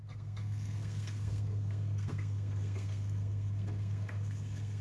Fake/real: fake